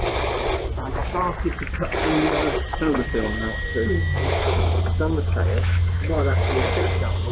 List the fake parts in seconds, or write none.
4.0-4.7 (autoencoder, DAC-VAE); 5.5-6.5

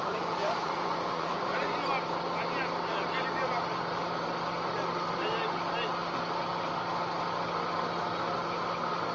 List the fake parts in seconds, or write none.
0.0-1.7 (vocoder, Vocos)

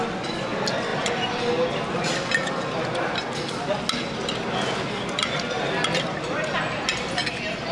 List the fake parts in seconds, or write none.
none

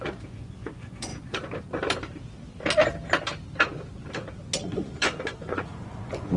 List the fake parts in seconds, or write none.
0.0-1.1 (vocoder, Vocos); 4.6-6.4

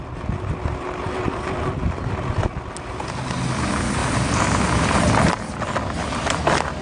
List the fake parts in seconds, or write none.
4.0-6.8 (vocoder, BigVGAN v2)

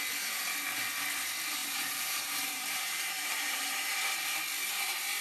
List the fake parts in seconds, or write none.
1.6-3.9 (vocoder, BigVGAN v2)